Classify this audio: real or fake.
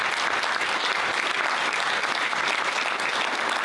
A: real